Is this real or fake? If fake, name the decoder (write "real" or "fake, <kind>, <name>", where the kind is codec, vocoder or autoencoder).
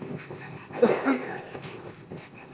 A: fake, codec, ZipCodec